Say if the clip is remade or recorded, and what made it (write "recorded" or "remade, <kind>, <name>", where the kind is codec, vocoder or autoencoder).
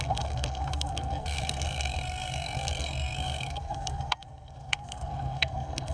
remade, codec, SNAC